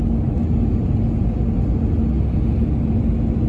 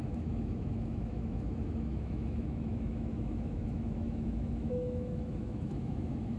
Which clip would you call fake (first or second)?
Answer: second